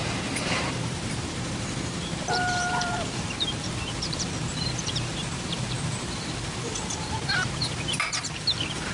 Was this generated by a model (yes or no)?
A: yes